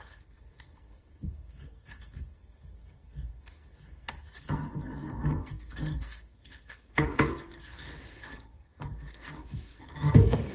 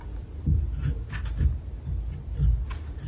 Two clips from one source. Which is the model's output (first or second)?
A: first